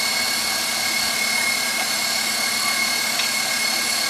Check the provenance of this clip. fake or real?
real